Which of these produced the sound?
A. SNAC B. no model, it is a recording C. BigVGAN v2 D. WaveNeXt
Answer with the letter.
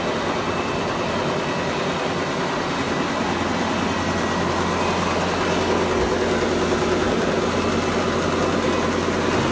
B